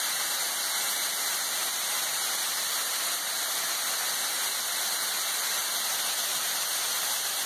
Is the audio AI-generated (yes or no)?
no